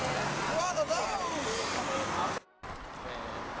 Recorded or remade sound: recorded